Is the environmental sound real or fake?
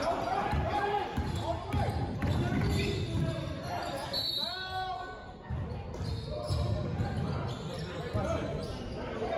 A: real